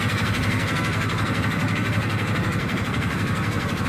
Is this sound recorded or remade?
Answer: remade